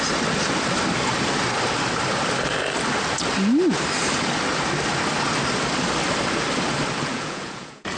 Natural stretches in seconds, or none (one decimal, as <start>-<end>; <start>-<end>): 0.0-7.1